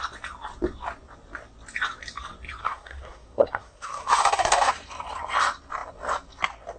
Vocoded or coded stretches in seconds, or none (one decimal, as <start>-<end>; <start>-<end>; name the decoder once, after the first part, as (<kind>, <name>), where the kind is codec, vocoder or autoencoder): 2.6-4.7 (codec, SNAC)